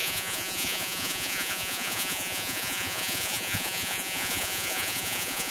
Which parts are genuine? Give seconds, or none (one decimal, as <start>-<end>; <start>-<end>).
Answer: none